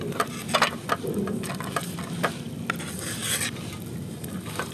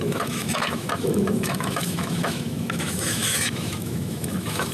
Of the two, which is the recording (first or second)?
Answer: first